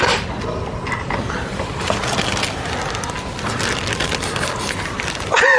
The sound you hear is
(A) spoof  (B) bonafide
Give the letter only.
B